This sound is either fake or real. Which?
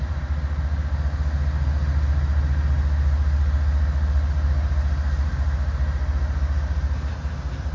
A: real